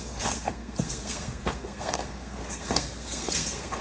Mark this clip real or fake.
fake